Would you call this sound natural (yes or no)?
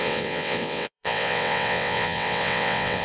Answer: no